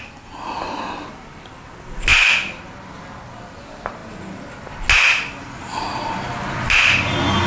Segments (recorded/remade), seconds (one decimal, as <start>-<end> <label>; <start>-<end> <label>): 0.0-2.1 remade; 2.1-3.6 recorded; 3.6-4.0 remade; 4.0-5.9 recorded; 5.9-7.5 remade